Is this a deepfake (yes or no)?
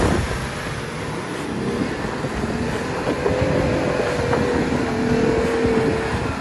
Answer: no